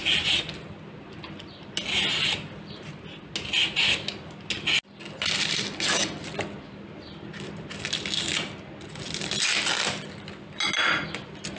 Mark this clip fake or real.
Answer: real